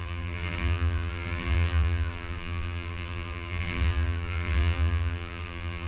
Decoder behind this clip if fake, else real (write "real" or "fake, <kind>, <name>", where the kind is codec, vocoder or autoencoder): fake, vocoder, BigVGAN v2